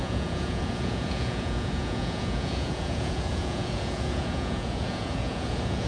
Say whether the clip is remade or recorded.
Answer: remade